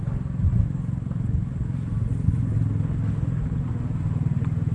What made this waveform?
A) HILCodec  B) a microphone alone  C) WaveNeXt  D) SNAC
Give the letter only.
B